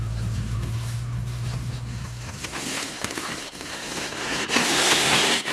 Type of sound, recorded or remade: remade